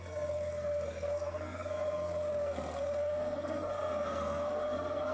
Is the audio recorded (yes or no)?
no